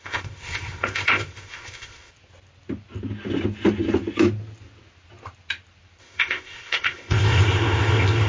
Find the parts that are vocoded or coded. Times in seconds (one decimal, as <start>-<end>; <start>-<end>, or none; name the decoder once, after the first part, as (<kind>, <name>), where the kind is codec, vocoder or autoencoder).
0.0-2.1 (codec, ZipCodec); 6.0-8.3